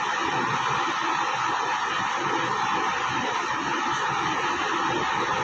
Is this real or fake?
real